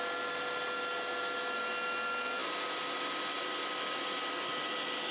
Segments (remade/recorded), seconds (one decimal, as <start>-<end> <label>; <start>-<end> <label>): 0.0-5.1 recorded